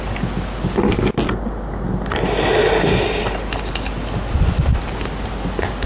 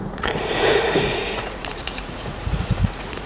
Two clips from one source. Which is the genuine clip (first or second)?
first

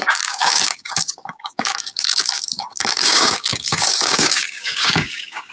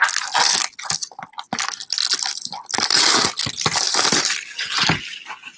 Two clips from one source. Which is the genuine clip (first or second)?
second